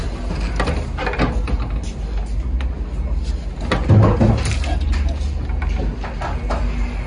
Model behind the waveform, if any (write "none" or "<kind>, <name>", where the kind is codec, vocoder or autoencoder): none